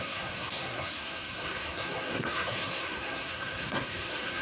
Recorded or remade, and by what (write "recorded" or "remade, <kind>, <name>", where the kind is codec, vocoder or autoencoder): remade, codec, SNAC